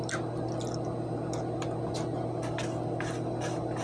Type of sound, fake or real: real